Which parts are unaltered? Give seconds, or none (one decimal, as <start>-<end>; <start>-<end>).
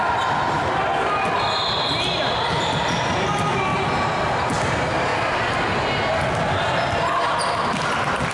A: 0.0-8.3